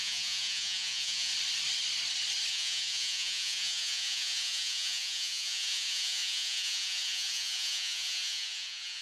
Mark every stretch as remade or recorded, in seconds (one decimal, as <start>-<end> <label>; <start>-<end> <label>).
0.0-1.3 remade; 1.3-2.5 recorded; 2.5-9.0 remade